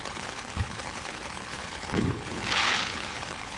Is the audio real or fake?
fake